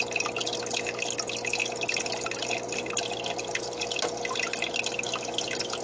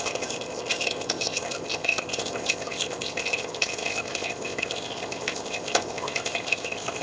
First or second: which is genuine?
first